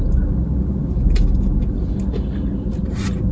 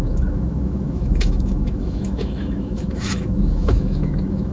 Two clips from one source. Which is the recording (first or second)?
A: first